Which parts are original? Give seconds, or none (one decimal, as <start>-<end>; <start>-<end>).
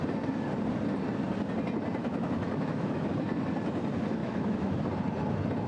0.0-2.0; 3.1-4.2; 4.7-5.7